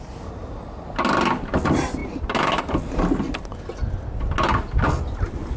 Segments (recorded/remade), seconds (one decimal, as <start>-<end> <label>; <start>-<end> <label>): 0.0-5.6 recorded